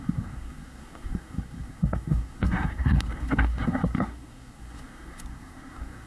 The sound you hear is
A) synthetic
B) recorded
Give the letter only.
A